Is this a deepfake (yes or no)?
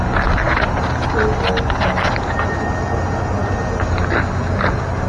no